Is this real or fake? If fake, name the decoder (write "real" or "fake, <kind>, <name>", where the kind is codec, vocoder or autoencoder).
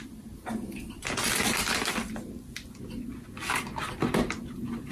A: real